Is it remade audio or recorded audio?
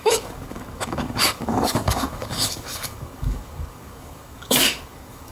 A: remade